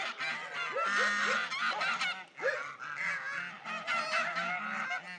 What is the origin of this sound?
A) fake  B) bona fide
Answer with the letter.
B